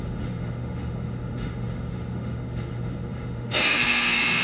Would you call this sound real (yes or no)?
no